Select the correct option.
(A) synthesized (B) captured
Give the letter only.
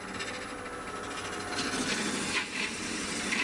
B